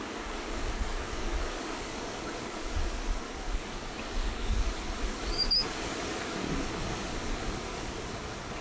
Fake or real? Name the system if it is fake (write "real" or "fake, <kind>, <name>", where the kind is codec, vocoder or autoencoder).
fake, codec, DAC